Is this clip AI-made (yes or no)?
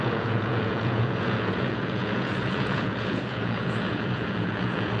yes